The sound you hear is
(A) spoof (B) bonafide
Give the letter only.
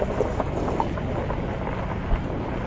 B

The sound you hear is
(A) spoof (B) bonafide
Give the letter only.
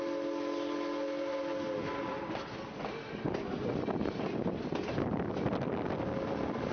B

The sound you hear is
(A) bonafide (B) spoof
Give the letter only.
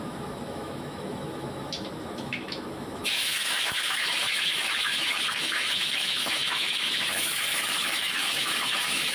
B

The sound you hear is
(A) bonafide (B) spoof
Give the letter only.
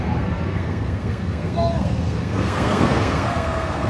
B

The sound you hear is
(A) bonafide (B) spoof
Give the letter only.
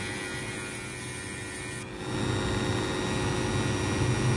A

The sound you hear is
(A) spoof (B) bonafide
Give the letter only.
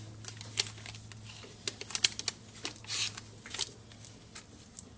B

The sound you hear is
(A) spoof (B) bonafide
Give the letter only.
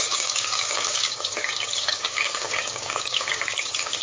A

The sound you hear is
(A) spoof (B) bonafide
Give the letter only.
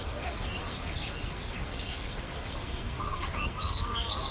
A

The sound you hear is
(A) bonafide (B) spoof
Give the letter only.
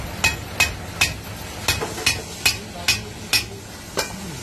A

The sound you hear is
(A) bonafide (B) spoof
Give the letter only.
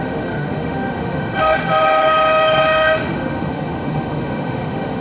B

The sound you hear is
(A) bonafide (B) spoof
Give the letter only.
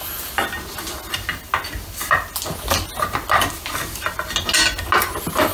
A